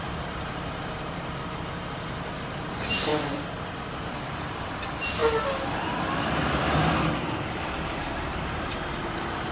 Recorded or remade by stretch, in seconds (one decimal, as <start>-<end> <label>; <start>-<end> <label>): 0.0-3.1 remade; 3.1-4.0 recorded; 4.0-9.5 remade